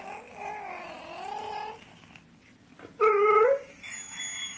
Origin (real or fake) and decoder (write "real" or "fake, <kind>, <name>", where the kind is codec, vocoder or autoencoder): real